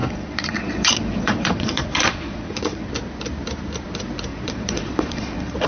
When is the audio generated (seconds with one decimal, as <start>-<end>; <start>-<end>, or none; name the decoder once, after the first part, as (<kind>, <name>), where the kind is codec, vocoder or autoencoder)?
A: 0.0-2.9 (vocoder, Vocos); 4.3-5.7